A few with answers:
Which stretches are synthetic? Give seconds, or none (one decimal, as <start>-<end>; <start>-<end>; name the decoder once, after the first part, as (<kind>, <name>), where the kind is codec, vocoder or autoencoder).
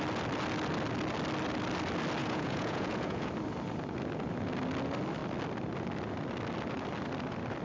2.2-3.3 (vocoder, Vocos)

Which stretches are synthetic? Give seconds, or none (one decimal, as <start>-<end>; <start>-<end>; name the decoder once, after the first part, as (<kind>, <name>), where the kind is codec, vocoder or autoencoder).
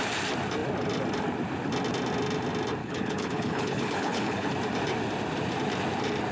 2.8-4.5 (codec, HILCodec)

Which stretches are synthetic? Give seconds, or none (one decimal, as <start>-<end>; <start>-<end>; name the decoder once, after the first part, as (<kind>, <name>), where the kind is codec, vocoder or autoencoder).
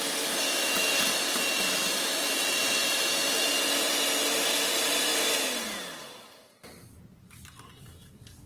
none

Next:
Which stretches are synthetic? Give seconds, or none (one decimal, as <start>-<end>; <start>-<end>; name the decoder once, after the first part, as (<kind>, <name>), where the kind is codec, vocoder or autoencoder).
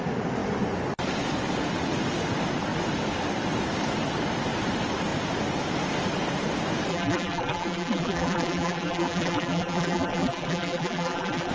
6.9-11.5 (vocoder, BigVGAN v2)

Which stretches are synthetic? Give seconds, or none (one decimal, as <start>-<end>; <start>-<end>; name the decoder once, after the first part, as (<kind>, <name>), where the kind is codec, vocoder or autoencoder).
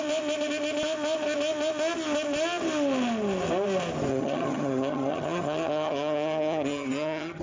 4.1-7.4 (vocoder, HiFi-GAN)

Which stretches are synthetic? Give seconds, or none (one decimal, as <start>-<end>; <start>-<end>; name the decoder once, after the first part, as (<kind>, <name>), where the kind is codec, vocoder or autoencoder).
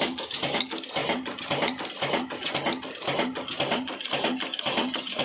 none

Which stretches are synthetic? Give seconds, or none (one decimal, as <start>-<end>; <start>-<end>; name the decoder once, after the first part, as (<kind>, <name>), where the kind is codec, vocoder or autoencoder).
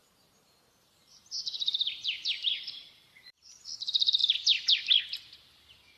0.0-3.6 (vocoder, BigVGAN v2)